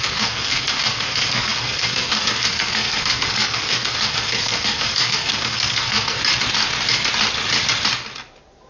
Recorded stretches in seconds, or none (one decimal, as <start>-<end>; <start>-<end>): 6.2-8.7